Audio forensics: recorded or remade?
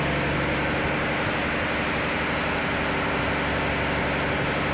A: recorded